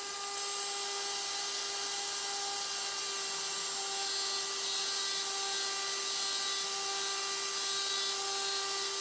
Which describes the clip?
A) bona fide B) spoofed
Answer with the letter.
A